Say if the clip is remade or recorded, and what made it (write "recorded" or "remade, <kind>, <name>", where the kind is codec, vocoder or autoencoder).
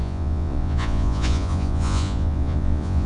remade, vocoder, Vocos